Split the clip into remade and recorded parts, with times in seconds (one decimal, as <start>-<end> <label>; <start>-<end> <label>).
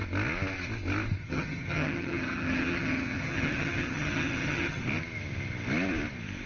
0.0-1.2 recorded; 1.2-4.8 remade; 4.8-6.5 recorded